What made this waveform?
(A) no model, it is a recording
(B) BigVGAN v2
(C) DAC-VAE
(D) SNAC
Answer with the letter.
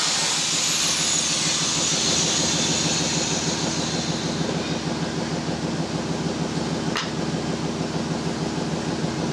A